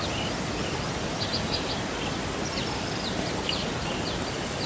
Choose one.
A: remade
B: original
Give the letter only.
B